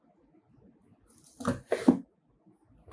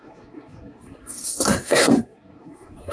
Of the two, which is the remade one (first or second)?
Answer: second